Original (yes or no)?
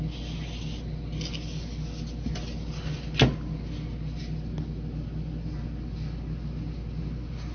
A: yes